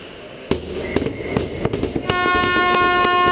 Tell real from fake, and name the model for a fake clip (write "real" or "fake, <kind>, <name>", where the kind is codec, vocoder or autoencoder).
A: real